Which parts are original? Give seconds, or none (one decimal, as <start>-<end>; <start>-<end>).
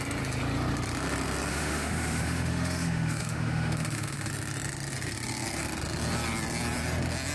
0.0-1.5; 4.3-7.3